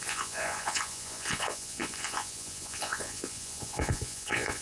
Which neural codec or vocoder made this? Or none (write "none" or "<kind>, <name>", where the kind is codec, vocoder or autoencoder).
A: vocoder, Vocos